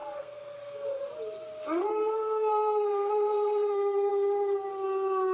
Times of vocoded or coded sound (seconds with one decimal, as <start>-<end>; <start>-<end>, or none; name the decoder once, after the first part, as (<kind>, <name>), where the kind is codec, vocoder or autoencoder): 0.0-1.0 (codec, SNAC); 1.9-4.1